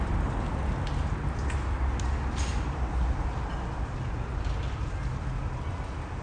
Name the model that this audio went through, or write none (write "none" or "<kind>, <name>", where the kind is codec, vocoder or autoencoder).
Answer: none